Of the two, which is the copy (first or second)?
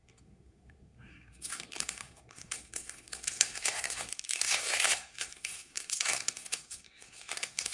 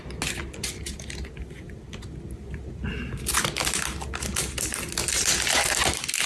first